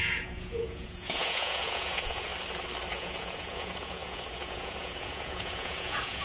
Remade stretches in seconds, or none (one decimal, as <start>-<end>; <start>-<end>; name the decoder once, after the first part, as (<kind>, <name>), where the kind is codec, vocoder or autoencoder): 0.0-2.3 (vocoder, Vocos); 2.9-6.2